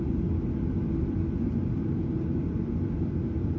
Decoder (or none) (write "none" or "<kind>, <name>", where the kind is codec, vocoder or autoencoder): none